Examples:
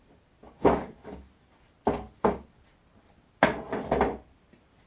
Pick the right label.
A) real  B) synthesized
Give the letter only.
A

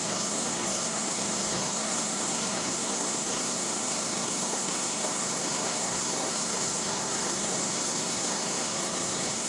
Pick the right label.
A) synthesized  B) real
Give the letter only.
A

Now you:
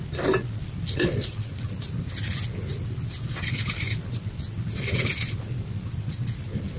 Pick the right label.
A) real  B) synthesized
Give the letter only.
A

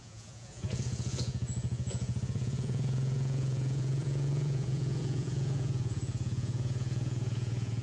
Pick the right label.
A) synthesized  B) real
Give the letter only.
A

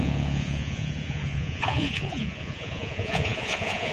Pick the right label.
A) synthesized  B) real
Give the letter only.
A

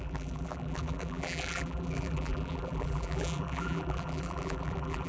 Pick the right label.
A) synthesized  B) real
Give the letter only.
A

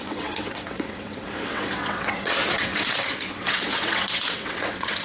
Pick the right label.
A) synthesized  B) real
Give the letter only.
A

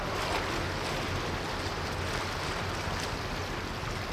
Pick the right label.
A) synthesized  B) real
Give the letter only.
B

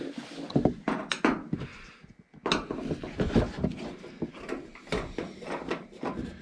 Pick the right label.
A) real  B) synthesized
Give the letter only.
A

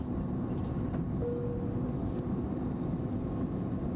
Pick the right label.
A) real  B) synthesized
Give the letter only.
A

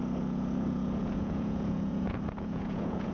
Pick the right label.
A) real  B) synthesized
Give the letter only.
B